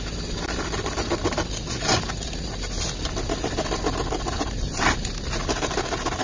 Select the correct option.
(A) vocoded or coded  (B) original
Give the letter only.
B